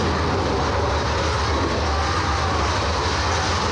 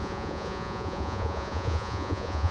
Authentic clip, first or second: first